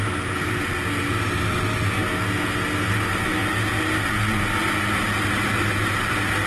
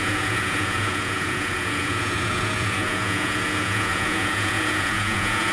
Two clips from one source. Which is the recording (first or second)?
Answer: first